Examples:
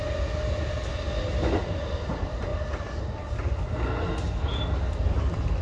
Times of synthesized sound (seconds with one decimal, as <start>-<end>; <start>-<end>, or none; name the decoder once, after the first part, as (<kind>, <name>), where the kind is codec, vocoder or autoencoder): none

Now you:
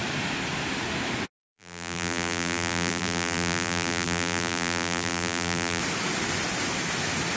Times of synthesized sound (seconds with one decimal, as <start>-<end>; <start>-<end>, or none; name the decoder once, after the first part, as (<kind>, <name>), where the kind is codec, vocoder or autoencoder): 1.4-5.8 (vocoder, BigVGAN v2)

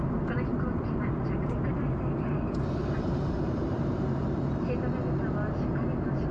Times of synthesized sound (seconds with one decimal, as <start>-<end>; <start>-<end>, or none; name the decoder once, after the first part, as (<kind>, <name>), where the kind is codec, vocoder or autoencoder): 0.5-4.3 (vocoder, BigVGAN v2)

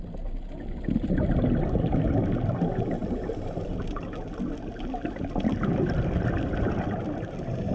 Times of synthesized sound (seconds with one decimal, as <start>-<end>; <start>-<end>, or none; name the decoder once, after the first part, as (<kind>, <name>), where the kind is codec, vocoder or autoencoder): 3.0-7.7 (vocoder, BigVGAN v2)

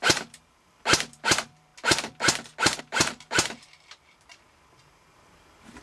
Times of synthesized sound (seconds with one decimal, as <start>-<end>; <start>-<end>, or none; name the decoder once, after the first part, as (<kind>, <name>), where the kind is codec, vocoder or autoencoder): 0.0-1.7 (vocoder, BigVGAN v2); 2.8-5.8